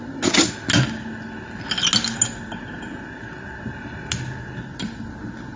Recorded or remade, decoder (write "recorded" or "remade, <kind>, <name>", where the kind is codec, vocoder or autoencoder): recorded